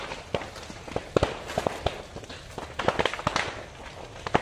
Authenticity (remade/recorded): recorded